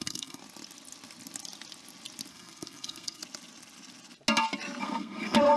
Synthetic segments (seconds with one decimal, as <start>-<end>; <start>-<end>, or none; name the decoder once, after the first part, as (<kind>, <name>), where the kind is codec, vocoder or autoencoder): 0.0-0.4 (codec, SNAC); 2.3-3.2; 4.8-5.6